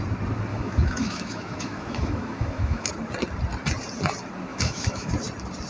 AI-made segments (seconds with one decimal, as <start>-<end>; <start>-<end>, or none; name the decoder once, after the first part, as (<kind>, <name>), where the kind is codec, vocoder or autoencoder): 0.5-2.9 (autoencoder, DAC-VAE); 4.5-5.1